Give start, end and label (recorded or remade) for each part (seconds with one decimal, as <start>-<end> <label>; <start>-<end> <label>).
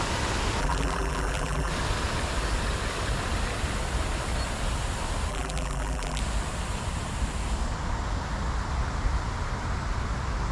0.0-0.6 recorded; 0.6-1.7 remade; 1.7-5.3 recorded; 5.3-6.2 remade; 6.2-10.5 recorded